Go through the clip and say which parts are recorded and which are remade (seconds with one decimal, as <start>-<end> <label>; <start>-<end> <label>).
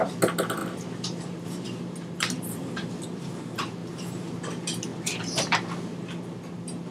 0.0-0.6 recorded; 0.6-2.9 remade; 2.9-3.8 recorded; 3.8-4.3 remade; 4.3-6.9 recorded